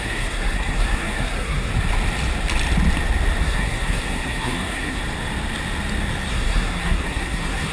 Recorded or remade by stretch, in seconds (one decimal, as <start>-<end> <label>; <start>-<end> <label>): 0.0-1.7 remade; 1.7-3.4 recorded; 3.4-5.0 remade; 5.0-6.3 recorded; 6.3-7.7 remade